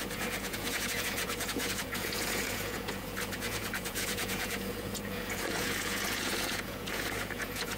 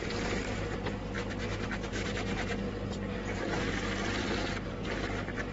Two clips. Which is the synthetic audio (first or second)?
first